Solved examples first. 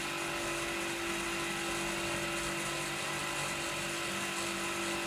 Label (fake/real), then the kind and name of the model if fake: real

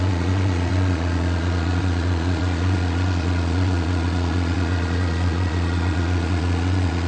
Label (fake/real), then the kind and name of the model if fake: fake, vocoder, Vocos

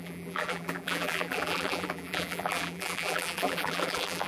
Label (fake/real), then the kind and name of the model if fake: fake, vocoder, BigVGAN v2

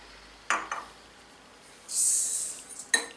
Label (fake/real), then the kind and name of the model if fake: real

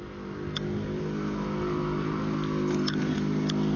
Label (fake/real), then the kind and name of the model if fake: real